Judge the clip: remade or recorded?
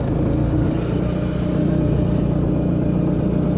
recorded